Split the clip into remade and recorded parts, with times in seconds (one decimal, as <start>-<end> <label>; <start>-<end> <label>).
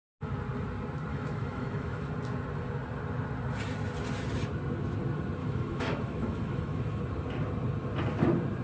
0.0-1.1 recorded; 1.1-2.1 remade; 2.1-5.4 recorded; 5.4-7.0 remade; 7.0-8.6 recorded